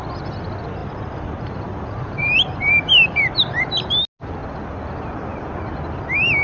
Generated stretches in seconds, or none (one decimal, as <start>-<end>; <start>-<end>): 0.8-3.7